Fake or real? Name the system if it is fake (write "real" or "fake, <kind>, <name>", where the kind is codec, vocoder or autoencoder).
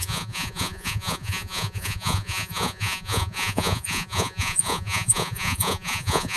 fake, vocoder, Vocos